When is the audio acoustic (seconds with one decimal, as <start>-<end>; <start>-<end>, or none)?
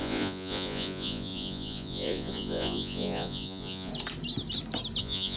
3.9-5.0